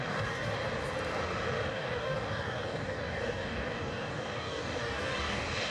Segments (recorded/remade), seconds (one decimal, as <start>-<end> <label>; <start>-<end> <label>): 0.0-0.5 remade; 0.5-1.7 recorded; 1.7-5.7 remade